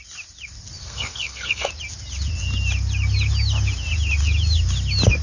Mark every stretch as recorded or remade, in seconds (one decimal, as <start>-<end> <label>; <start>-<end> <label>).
0.0-0.8 recorded; 0.8-1.7 remade; 1.7-5.2 recorded